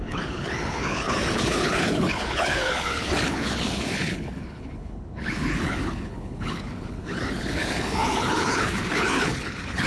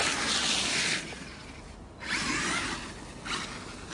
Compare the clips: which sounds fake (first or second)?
first